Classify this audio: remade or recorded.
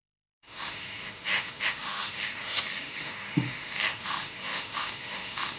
remade